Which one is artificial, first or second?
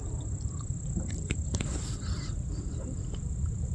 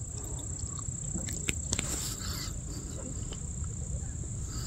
first